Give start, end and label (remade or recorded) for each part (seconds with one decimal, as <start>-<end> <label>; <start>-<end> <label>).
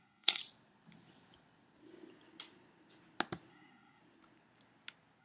0.0-0.4 remade; 0.4-3.5 recorded; 3.5-4.0 remade; 4.0-5.2 recorded